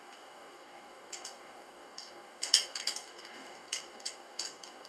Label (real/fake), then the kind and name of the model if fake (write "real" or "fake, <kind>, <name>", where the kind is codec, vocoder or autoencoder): fake, codec, DAC